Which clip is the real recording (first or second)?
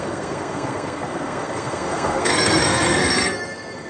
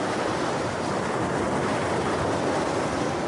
second